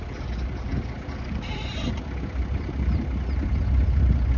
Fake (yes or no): no